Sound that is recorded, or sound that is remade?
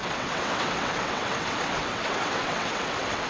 remade